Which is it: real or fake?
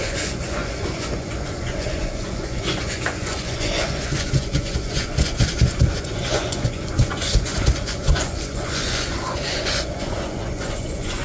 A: fake